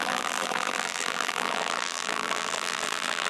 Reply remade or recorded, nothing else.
remade